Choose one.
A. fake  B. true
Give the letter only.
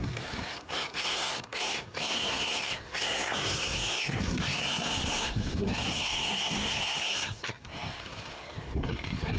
A